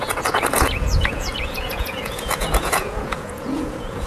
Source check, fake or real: fake